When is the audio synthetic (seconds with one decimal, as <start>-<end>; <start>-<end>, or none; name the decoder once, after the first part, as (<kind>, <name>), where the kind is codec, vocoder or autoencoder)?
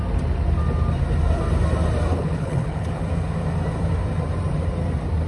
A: 2.1-3.0 (codec, HILCodec)